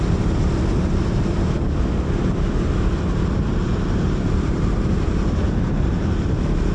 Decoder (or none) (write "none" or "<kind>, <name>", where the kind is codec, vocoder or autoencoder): none